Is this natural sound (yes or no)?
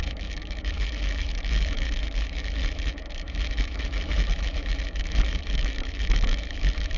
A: no